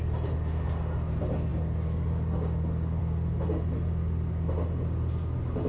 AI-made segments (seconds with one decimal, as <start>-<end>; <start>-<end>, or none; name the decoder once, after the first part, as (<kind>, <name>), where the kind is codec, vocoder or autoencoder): none